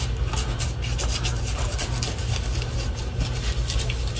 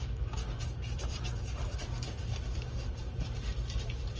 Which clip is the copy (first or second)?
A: second